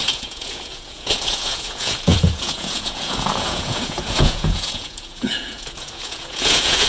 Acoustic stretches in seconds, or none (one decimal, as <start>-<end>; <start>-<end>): none

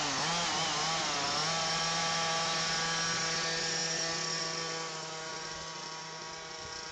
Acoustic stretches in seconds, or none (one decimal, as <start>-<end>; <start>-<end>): 0.0-6.9

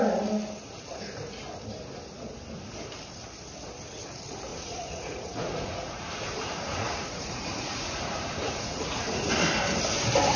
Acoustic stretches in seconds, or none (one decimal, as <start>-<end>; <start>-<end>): 0.0-4.5; 9.3-10.4

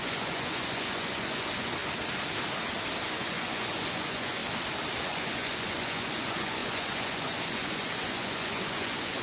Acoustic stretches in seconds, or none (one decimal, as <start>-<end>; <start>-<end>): 1.8-3.1; 4.4-5.0

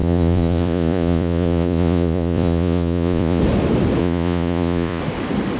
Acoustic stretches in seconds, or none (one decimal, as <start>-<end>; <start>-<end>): 3.4-4.0; 5.0-5.6

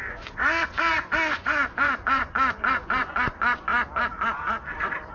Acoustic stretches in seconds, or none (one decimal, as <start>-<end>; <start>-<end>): 3.7-5.1

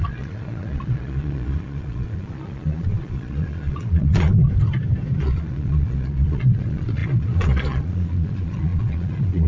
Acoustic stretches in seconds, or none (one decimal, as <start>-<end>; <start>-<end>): 4.4-5.2

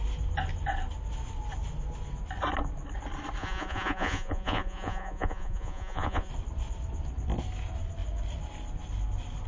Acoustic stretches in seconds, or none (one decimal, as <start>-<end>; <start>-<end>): 0.0-3.4; 6.3-9.5